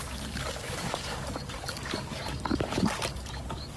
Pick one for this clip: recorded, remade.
remade